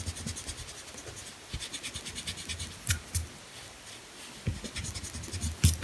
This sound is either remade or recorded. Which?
recorded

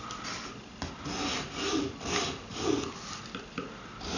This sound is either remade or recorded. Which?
recorded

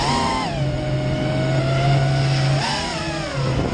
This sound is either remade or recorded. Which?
recorded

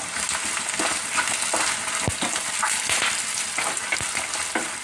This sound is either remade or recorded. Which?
recorded